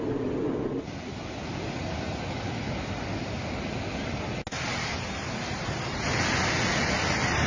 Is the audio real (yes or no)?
yes